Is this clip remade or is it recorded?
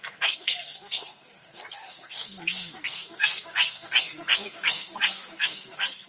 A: remade